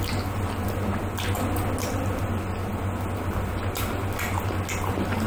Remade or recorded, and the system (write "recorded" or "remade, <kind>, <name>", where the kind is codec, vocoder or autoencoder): recorded